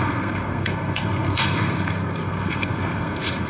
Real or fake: fake